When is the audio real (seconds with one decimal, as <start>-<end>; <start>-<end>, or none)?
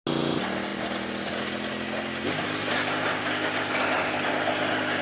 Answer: 0.0-5.0